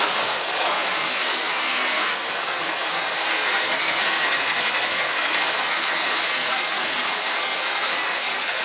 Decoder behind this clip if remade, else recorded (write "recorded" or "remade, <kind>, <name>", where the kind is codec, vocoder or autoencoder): remade, codec, SNAC